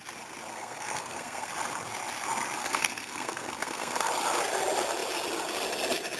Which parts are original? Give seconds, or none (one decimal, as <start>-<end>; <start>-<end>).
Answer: 0.0-0.5; 1.5-2.6; 4.1-6.2